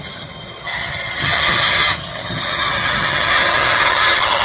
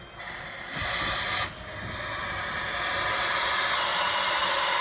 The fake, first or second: first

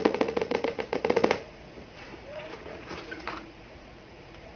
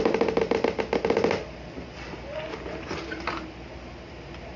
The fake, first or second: first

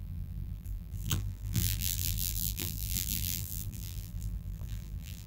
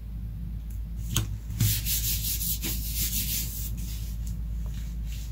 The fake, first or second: first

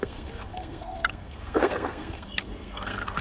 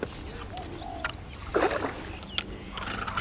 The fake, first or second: first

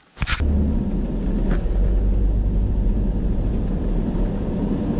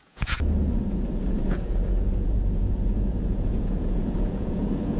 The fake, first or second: second